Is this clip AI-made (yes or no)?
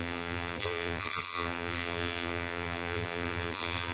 yes